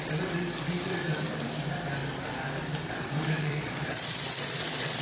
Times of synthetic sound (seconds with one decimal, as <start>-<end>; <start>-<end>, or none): 3.4-5.0